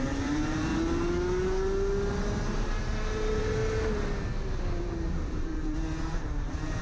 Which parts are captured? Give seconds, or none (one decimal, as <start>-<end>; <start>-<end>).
0.7-2.6; 3.6-4.8; 5.5-6.1